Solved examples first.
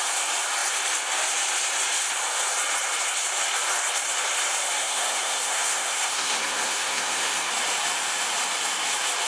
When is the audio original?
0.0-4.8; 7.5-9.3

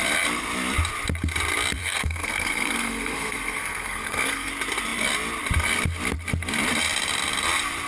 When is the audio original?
0.0-1.8; 4.5-7.9

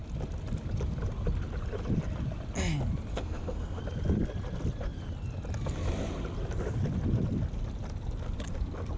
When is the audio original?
0.0-3.1; 3.8-9.0

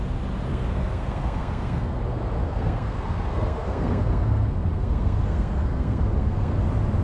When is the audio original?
0.0-0.5; 2.0-2.4; 6.6-7.0

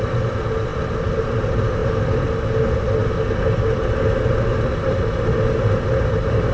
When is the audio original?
0.0-6.5